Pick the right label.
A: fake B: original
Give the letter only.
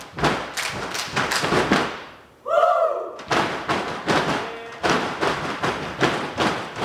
A